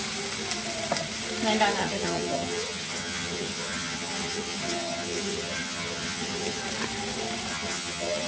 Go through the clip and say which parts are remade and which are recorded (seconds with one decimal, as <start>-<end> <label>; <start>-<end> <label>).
0.0-1.8 recorded; 1.8-6.6 remade; 6.6-7.5 recorded; 7.5-8.3 remade